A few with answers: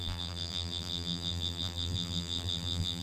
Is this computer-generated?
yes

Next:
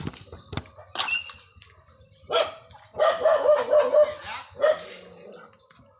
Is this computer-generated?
no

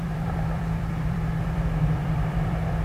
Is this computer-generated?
yes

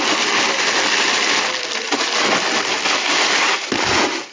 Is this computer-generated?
no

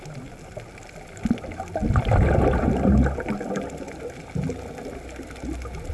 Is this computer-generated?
no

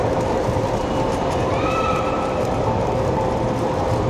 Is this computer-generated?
yes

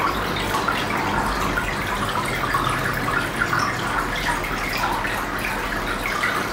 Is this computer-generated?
no